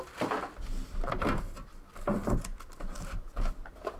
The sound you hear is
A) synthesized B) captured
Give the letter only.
B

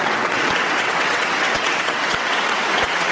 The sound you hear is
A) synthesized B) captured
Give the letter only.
A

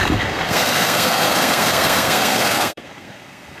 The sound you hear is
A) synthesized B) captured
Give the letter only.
A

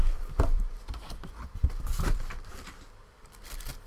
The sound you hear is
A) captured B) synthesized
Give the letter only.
B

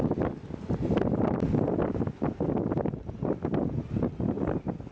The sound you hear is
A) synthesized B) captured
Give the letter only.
B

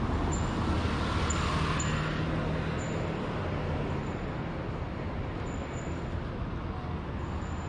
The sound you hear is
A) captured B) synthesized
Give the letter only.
A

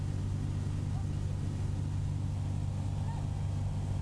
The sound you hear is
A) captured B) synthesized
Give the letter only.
A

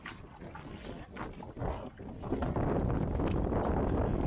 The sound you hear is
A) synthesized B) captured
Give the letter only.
B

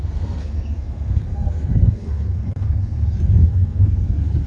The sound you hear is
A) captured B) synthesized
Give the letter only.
B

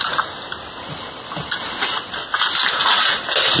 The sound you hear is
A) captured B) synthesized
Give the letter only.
A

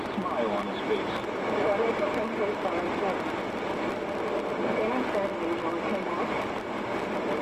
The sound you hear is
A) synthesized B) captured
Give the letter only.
B